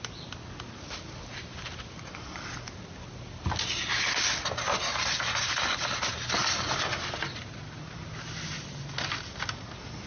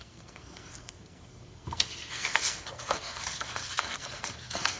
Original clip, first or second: first